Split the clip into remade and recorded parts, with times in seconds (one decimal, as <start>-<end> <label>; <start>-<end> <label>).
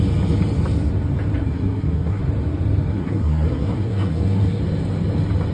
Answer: 0.0-1.4 recorded; 1.4-2.2 remade; 2.2-2.9 recorded; 2.9-4.6 remade; 4.6-5.5 recorded